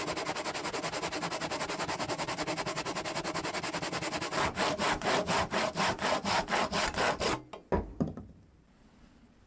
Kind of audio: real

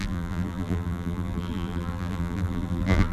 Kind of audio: fake